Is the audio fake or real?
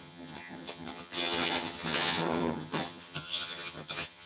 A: fake